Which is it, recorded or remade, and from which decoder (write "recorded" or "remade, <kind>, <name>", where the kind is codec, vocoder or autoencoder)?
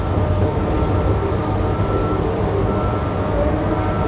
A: recorded